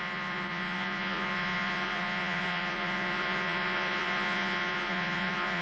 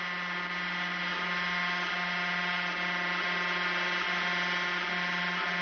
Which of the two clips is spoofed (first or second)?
first